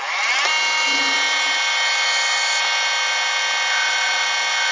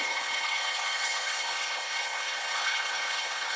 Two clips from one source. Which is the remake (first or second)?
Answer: second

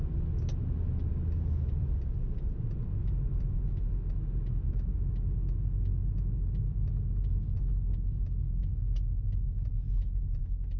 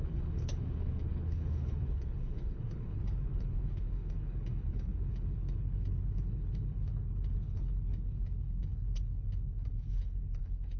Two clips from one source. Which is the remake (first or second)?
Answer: second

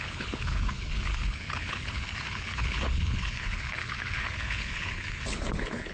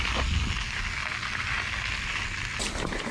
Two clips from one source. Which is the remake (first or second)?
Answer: first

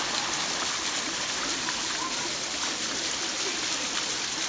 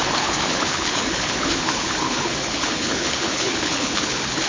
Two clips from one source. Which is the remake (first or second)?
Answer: second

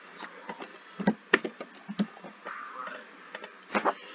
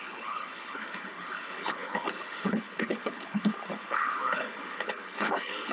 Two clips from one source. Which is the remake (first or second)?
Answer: second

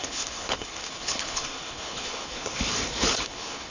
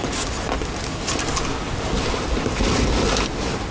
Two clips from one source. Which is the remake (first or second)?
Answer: first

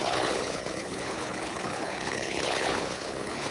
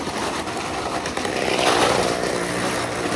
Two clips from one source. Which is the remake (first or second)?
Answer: first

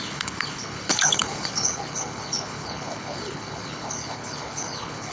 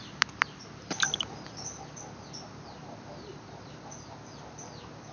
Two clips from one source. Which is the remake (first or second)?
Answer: first